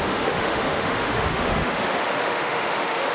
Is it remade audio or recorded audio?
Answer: remade